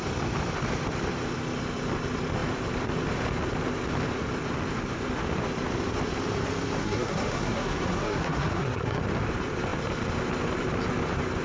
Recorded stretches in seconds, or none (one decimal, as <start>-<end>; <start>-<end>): 0.0-6.8; 9.0-11.4